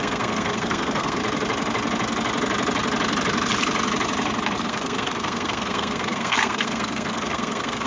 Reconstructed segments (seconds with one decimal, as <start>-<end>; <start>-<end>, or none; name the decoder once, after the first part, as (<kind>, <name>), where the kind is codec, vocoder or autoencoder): 0.0-1.2 (codec, SNAC); 4.6-7.9